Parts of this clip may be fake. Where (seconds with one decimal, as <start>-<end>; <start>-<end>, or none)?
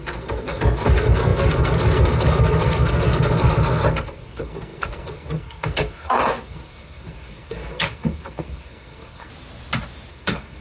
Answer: 0.0-9.3; 10.1-10.6